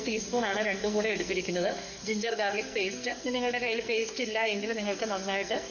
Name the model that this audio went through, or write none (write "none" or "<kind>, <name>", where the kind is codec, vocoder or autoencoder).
codec, SNAC